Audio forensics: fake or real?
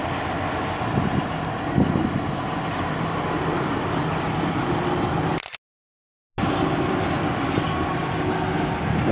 real